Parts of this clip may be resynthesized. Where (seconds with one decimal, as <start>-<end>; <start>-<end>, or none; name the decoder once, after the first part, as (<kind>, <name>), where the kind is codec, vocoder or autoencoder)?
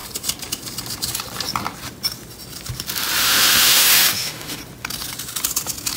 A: 3.2-4.6 (autoencoder, DAC-VAE)